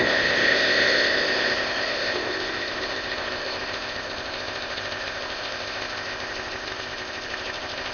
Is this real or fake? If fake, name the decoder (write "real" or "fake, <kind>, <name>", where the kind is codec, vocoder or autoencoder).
fake, codec, ZipCodec